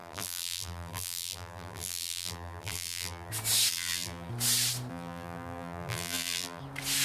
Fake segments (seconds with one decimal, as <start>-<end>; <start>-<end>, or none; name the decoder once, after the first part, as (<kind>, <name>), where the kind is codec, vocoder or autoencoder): 0.0-3.3 (vocoder, BigVGAN v2); 3.7-4.3; 4.9-6.6